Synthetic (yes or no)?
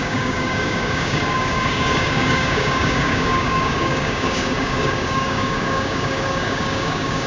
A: yes